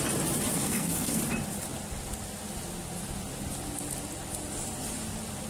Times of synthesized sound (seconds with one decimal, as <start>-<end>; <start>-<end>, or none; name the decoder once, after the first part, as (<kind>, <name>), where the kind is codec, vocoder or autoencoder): 0.5-1.2 (codec, SNAC)

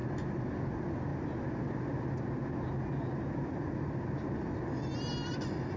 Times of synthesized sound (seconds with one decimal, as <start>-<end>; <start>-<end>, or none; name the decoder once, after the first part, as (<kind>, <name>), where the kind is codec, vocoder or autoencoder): none

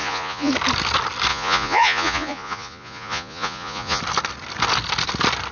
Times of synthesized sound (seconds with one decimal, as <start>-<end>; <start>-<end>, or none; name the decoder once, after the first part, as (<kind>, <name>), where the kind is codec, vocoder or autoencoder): 0.0-0.5 (vocoder, Vocos); 1.3-4.0

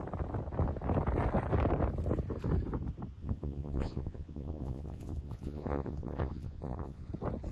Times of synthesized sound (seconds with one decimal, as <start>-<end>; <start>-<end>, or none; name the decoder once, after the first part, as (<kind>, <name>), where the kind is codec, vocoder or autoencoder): 3.2-7.1 (vocoder, Vocos)

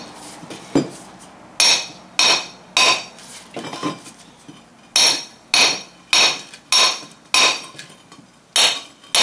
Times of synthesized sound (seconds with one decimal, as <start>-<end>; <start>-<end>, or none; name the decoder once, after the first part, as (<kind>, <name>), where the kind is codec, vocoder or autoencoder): none

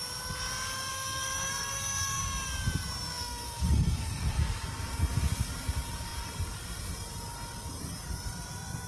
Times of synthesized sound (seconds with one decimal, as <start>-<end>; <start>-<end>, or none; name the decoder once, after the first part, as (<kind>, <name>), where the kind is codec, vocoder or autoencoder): 0.9-2.2 (codec, SNAC); 3.1-4.4